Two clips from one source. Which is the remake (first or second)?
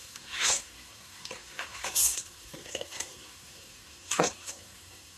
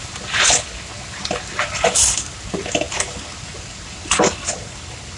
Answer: first